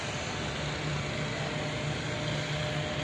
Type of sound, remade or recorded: recorded